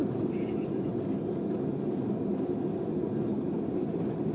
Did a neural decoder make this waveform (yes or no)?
no